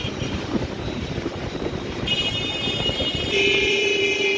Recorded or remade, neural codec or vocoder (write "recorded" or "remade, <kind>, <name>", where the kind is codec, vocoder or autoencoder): remade, vocoder, BigVGAN v2